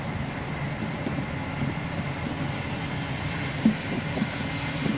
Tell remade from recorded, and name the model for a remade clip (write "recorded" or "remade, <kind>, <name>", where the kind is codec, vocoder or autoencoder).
recorded